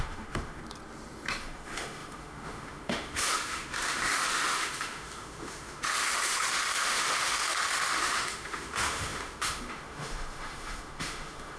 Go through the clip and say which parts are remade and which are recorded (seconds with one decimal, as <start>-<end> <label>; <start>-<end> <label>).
0.0-0.6 remade; 0.6-1.4 recorded; 1.4-11.6 remade